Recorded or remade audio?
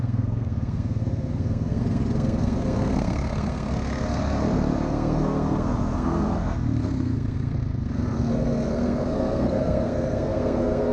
remade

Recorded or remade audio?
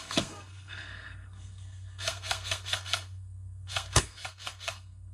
remade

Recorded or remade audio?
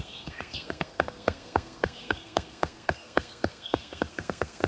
remade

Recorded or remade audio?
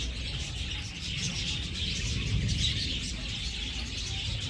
recorded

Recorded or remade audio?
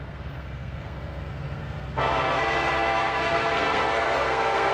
remade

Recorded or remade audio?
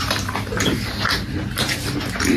recorded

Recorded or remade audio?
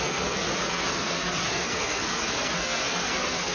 remade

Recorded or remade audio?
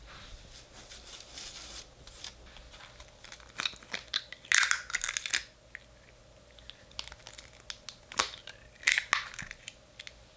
recorded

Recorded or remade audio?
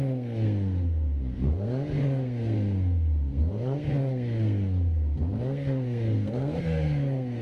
remade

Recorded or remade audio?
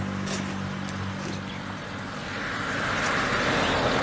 recorded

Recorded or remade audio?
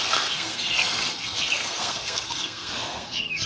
remade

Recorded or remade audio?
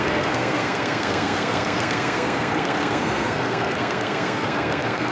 remade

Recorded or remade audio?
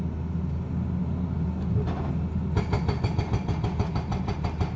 recorded